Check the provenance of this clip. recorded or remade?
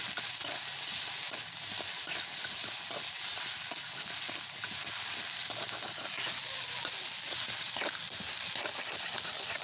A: recorded